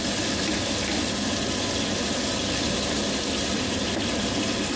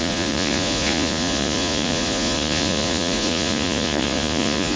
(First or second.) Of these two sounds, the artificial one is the second